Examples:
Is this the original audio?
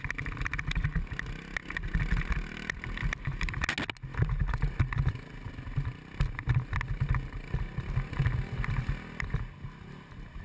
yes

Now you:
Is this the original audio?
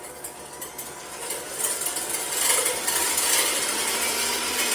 yes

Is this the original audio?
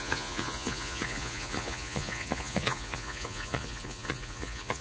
no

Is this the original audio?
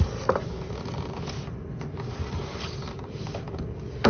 yes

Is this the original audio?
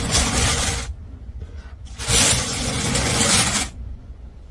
no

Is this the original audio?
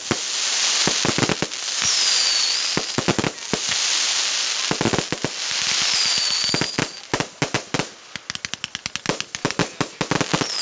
yes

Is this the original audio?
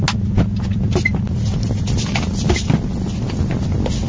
yes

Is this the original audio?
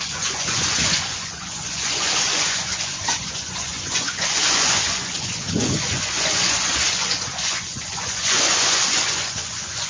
no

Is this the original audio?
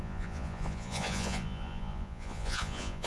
no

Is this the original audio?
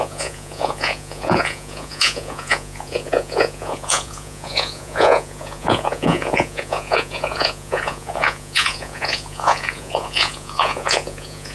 no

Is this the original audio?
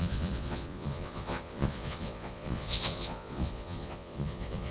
no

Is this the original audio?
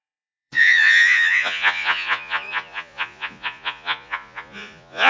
no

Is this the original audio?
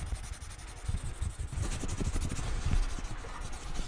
yes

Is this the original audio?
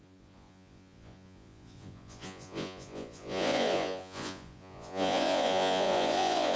no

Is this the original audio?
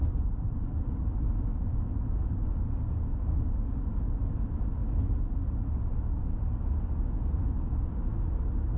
yes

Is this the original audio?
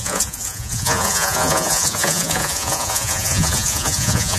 no